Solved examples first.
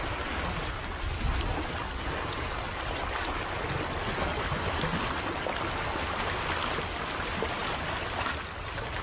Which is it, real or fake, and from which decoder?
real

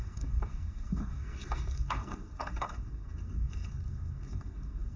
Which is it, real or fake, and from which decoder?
fake, codec, SNAC